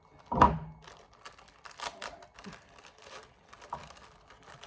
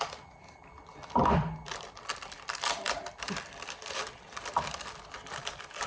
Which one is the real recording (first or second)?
first